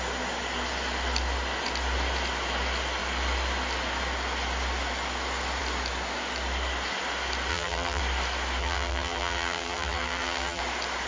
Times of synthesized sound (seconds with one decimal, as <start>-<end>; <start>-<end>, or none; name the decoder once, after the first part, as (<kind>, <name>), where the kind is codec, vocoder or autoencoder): 7.5-8.0 (vocoder, BigVGAN v2); 8.6-10.6